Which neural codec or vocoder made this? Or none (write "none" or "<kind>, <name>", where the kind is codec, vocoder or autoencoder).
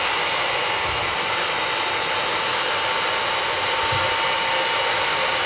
none